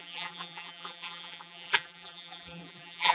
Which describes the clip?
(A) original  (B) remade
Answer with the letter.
B